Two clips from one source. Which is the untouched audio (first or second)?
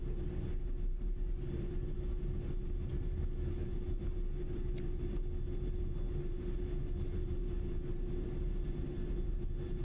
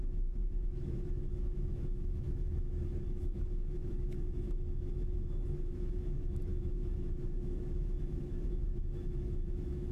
first